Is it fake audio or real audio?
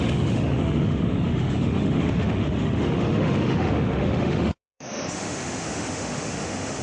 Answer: fake